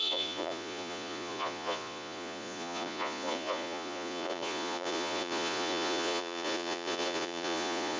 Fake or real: fake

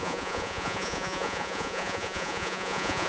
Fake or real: fake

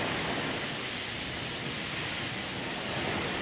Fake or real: real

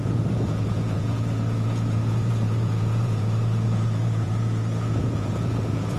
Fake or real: fake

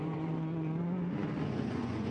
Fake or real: fake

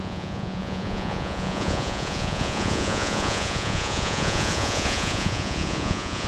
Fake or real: fake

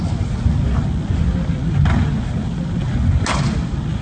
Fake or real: real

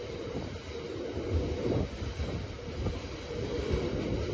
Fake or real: real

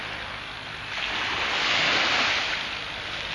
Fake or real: real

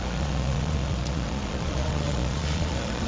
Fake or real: fake